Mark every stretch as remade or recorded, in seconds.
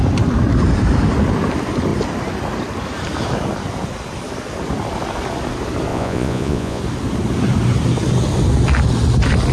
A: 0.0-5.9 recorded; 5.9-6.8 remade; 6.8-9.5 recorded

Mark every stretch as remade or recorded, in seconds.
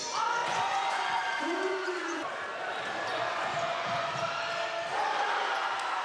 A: 0.0-0.4 recorded; 0.4-2.3 remade; 2.3-3.1 recorded; 3.1-4.2 remade; 4.2-6.0 recorded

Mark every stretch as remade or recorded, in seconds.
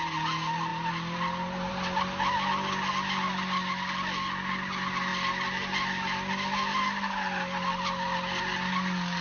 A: 0.0-9.2 recorded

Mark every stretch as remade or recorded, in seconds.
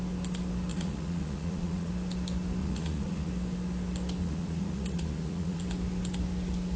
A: 0.0-0.7 recorded; 0.7-1.9 remade; 1.9-2.6 recorded; 2.6-3.3 remade; 3.3-4.2 recorded; 4.2-5.6 remade; 5.6-6.8 recorded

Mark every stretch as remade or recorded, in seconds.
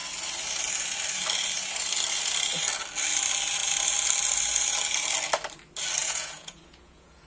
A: 0.0-6.0 recorded; 6.0-7.3 remade